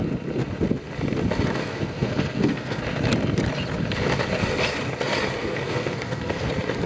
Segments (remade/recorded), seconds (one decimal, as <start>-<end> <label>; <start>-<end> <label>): 0.0-1.6 recorded; 1.6-2.8 remade; 2.8-5.4 recorded; 5.4-6.5 remade; 6.5-6.9 recorded